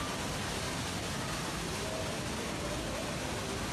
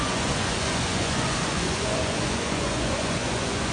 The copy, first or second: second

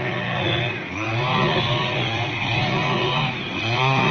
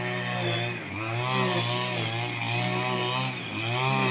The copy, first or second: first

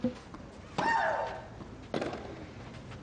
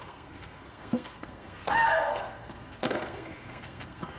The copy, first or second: second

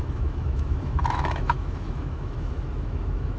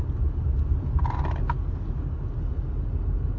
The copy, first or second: first